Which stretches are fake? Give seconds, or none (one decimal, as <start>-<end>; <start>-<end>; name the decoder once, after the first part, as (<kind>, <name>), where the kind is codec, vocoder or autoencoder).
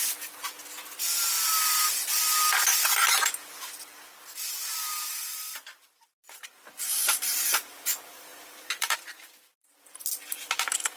0.0-0.4 (vocoder, BigVGAN v2); 5.1-11.0